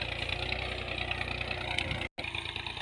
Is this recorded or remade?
recorded